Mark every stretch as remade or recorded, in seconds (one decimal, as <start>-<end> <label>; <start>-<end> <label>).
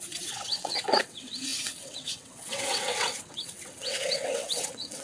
0.0-5.0 remade